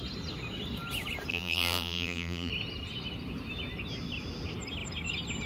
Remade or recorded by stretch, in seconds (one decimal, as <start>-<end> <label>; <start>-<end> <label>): 0.0-1.3 recorded; 1.3-2.5 remade; 2.5-5.5 recorded